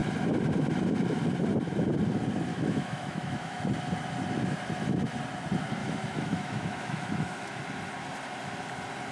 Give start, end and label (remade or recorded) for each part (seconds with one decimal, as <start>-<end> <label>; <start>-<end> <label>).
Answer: 0.0-2.5 recorded; 2.5-3.6 remade; 3.6-5.8 recorded; 5.8-7.6 remade; 7.6-9.1 recorded